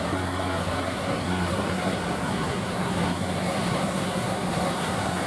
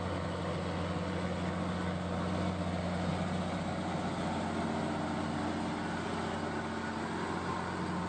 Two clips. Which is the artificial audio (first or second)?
first